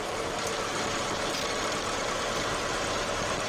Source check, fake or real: fake